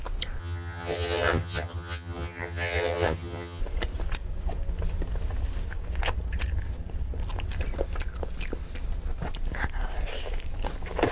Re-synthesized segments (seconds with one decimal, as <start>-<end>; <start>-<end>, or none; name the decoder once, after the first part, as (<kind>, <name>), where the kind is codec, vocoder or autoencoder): 0.4-3.6 (vocoder, HiFi-GAN)